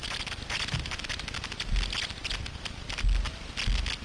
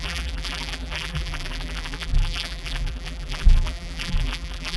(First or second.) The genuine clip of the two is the first